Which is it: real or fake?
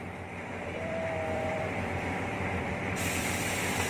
fake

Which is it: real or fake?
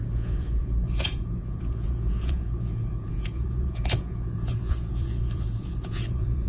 fake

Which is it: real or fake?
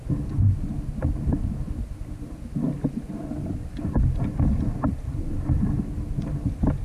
real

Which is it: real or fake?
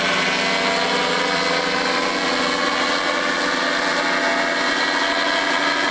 real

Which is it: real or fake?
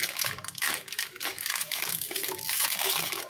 fake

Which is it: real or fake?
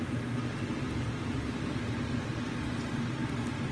real